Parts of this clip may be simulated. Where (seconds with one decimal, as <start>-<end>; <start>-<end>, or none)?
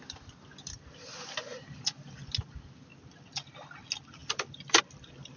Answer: 1.5-2.2; 4.2-4.8